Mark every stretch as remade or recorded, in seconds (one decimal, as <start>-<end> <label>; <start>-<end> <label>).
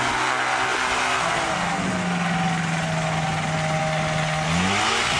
0.0-5.2 recorded